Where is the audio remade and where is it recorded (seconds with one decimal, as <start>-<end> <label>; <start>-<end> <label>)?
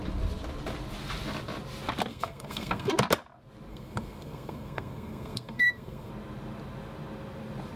0.0-2.1 recorded; 2.1-2.9 remade; 2.9-3.7 recorded; 3.7-6.1 remade; 6.1-7.8 recorded